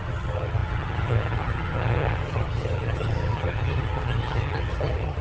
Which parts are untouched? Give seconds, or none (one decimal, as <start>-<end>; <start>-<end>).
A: none